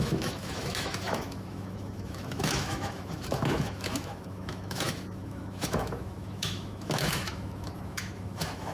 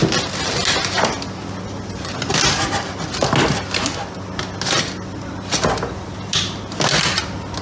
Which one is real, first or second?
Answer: second